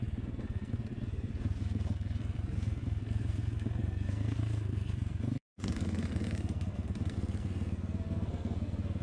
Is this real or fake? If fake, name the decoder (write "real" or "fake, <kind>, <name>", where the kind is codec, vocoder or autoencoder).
fake, codec, SNAC